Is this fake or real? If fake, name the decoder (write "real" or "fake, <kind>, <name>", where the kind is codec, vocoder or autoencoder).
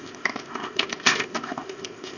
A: fake, codec, ZipCodec